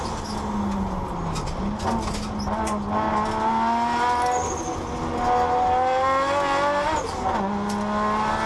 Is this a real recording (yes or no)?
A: yes